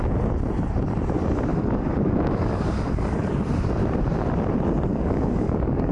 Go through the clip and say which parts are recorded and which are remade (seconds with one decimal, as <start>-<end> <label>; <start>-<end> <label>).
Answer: 0.0-1.5 recorded; 1.5-3.3 remade; 3.3-4.9 recorded; 4.9-5.9 remade